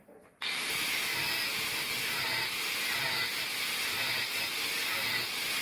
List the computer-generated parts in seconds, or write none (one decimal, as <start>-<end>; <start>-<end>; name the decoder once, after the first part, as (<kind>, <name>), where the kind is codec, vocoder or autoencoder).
none